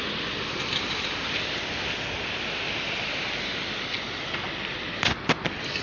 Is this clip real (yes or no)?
yes